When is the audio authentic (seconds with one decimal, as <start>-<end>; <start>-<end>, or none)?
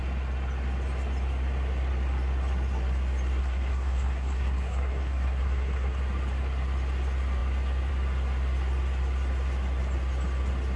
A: 0.0-3.4; 6.0-10.8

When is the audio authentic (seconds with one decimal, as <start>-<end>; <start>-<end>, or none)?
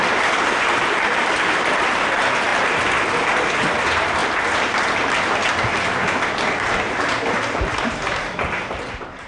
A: 0.0-9.3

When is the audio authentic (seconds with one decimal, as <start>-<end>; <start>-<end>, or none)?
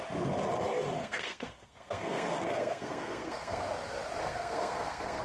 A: 0.0-1.0; 3.6-4.2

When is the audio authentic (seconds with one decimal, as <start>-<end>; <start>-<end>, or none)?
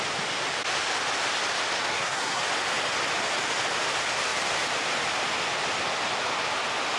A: 0.0-1.9; 2.4-7.0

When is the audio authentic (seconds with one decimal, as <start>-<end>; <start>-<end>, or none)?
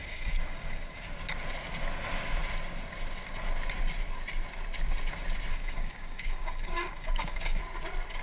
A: 1.1-5.5; 7.6-8.2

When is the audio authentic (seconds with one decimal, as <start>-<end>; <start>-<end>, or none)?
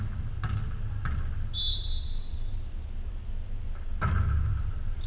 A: 0.0-5.1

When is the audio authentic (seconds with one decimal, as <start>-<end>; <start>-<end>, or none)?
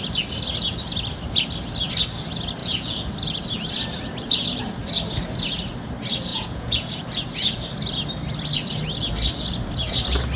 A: 0.0-2.6; 3.1-6.3; 7.0-10.4